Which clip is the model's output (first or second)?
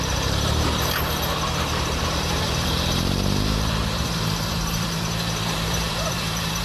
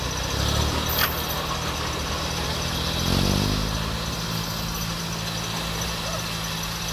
first